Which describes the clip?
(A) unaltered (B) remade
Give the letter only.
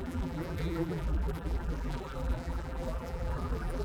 B